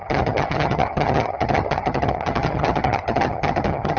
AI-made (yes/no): yes